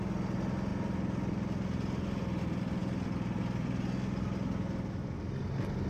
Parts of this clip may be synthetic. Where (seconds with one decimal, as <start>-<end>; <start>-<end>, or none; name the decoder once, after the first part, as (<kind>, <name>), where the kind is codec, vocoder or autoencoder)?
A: none